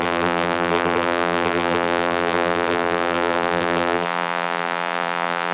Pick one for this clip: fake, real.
fake